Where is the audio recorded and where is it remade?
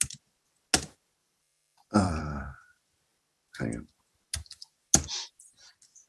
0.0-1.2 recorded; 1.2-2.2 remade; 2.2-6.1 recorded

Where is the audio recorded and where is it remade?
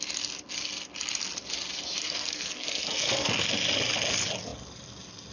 0.0-2.0 recorded; 2.0-3.4 remade; 3.4-5.3 recorded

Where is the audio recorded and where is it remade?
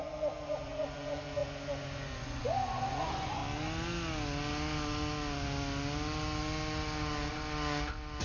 0.0-3.4 remade; 3.4-8.2 recorded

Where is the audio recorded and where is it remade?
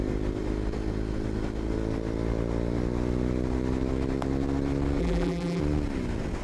0.0-5.0 recorded; 5.0-5.6 remade; 5.6-6.4 recorded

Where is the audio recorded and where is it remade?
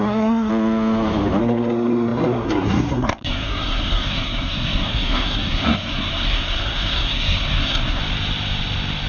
0.0-0.5 remade; 0.5-1.4 recorded; 1.4-8.0 remade; 8.0-9.1 recorded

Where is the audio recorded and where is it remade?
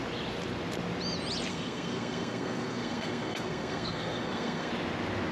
0.0-1.5 recorded; 1.5-4.7 remade; 4.7-5.3 recorded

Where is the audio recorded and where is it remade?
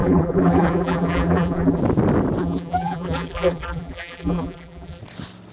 0.0-1.8 remade; 1.8-2.4 recorded; 2.4-5.0 remade; 5.0-5.5 recorded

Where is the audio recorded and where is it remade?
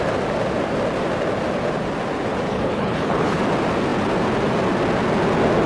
0.0-2.5 recorded; 2.5-3.4 remade; 3.4-5.7 recorded